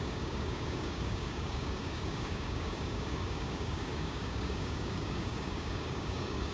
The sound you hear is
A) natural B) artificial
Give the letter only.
B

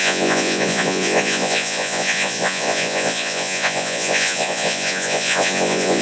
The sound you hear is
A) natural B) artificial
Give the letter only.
B